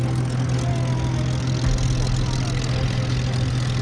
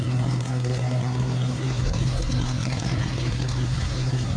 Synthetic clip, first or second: second